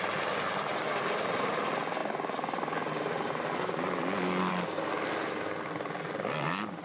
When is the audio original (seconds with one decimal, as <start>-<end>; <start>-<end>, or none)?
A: 0.0-0.8; 1.5-6.8